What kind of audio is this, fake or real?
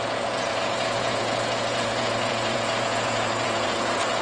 fake